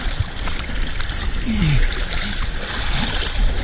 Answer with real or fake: real